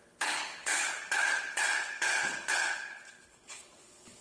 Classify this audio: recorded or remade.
remade